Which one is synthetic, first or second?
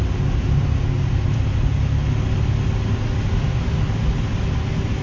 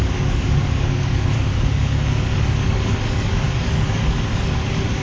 second